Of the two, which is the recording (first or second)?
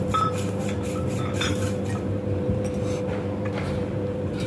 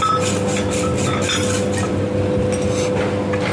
second